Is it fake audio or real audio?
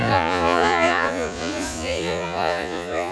fake